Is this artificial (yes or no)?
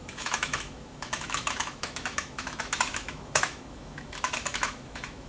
yes